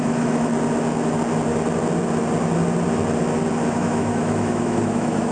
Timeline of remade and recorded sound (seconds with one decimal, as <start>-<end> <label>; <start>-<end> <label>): 0.0-0.5 remade; 0.5-3.7 recorded; 3.7-5.3 remade